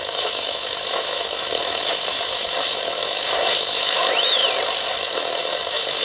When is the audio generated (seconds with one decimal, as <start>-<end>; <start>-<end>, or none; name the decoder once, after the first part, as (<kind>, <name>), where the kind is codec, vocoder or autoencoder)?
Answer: 0.0-4.4 (autoencoder, DAC-VAE); 4.9-6.0